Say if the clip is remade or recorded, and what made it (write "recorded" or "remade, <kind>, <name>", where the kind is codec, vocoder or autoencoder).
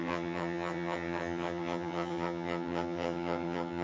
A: remade, vocoder, HiFi-GAN